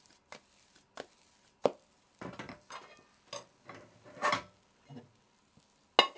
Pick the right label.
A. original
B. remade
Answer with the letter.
A